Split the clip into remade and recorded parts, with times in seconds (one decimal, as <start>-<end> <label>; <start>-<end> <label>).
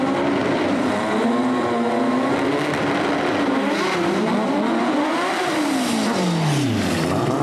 0.0-0.4 recorded; 0.4-1.0 remade; 1.0-7.4 recorded